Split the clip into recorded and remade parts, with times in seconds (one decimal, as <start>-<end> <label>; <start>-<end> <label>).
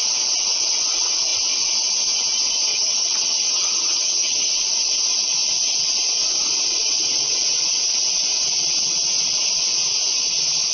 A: 0.0-2.7 recorded; 2.7-4.5 remade; 4.5-10.7 recorded